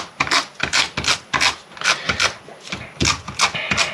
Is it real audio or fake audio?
real